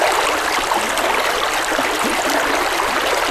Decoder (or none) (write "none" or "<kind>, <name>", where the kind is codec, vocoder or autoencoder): none